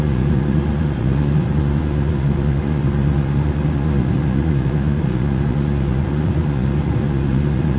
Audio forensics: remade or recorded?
remade